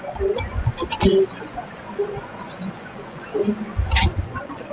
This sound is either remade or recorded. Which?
remade